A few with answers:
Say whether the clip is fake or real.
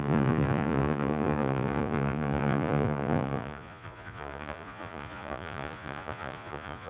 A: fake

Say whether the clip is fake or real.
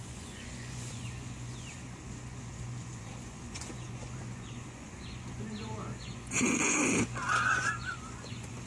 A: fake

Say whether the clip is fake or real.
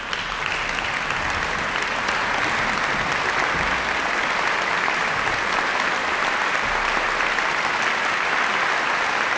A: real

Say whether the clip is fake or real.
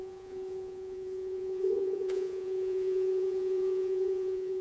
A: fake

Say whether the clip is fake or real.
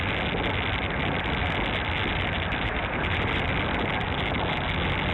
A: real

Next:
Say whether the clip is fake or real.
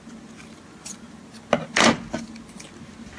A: real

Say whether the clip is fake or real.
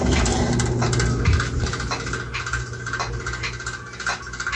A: real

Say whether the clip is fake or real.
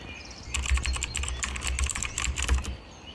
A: real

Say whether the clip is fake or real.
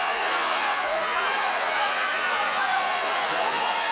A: fake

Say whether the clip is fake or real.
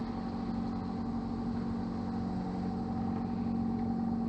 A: real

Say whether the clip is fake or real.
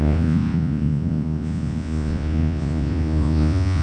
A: fake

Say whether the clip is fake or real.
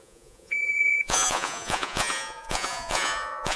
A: fake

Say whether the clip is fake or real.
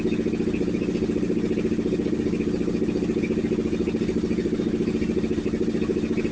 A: real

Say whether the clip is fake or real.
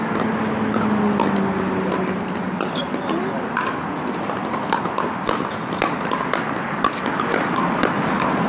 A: real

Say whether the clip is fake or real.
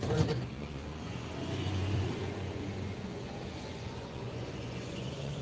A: fake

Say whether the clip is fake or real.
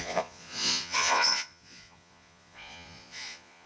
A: fake